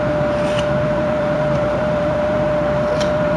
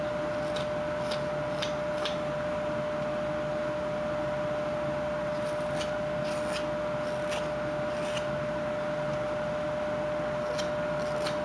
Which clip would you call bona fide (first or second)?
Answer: second